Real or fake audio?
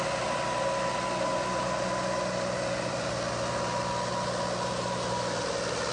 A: real